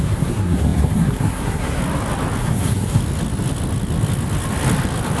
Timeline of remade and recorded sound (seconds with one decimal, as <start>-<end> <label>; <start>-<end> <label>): 0.0-1.8 remade; 1.8-2.4 recorded; 2.4-3.0 remade; 3.0-5.2 recorded